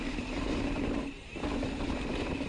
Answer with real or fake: real